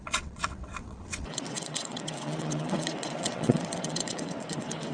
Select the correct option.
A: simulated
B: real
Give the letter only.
A